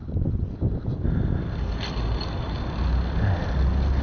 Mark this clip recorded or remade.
recorded